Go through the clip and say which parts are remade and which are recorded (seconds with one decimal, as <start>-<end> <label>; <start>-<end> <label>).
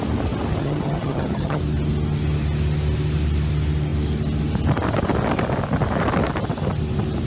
0.0-0.6 recorded; 0.6-1.6 remade; 1.6-7.3 recorded